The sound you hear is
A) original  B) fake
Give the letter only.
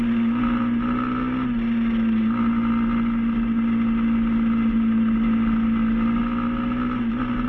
A